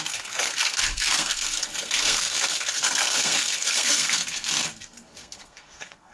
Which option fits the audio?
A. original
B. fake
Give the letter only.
B